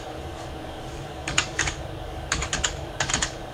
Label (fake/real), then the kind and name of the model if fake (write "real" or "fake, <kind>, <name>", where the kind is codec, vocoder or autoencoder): fake, codec, DAC